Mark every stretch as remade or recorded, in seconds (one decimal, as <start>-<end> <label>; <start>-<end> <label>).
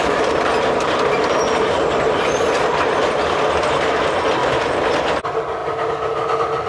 0.0-4.4 recorded; 4.4-5.0 remade; 5.0-6.7 recorded